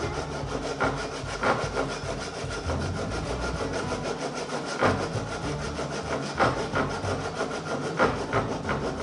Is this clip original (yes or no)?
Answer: yes